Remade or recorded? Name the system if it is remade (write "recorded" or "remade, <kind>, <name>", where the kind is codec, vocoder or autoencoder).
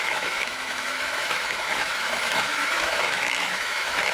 remade, autoencoder, DAC-VAE